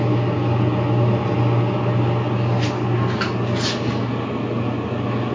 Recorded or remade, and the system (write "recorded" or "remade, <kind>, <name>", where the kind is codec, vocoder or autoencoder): recorded